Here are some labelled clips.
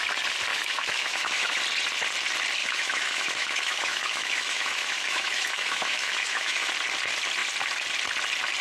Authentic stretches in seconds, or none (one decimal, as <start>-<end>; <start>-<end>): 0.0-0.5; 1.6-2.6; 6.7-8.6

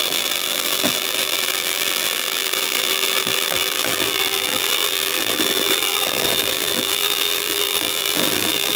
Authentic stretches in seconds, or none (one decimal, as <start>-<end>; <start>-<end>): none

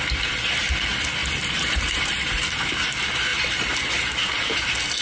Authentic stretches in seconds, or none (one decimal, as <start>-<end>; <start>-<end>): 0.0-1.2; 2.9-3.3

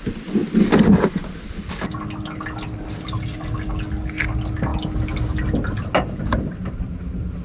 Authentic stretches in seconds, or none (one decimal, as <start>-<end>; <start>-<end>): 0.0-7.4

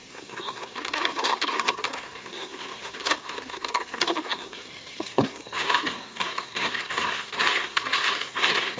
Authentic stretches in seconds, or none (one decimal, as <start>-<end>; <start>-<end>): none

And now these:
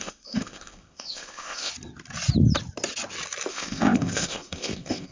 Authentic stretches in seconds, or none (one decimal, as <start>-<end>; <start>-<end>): 1.7-3.5